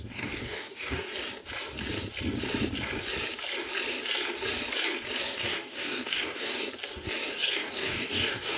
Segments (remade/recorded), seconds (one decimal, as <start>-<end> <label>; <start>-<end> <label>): 0.0-1.1 remade; 1.1-5.2 recorded; 5.2-6.7 remade; 6.7-7.3 recorded; 7.3-8.6 remade